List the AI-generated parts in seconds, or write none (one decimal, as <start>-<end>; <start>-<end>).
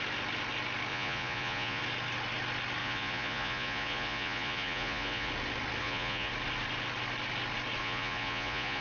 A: 0.9-1.8; 2.8-5.3; 5.8-6.3; 7.8-8.8